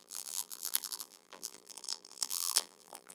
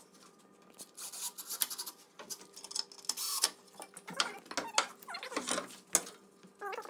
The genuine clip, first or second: second